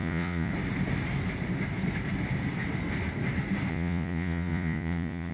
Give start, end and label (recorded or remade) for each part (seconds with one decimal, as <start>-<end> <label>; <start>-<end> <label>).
0.0-0.5 remade; 0.5-3.7 recorded; 3.7-5.3 remade